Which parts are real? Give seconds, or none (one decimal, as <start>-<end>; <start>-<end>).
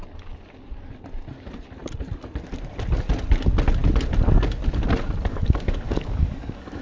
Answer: 0.0-5.3